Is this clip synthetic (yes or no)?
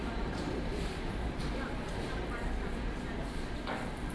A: yes